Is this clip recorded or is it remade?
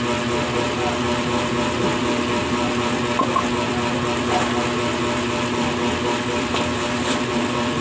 recorded